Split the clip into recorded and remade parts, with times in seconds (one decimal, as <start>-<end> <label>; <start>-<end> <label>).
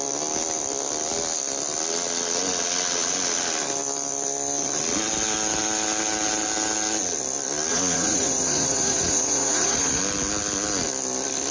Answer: 0.0-7.7 recorded; 7.7-10.0 remade; 10.0-11.5 recorded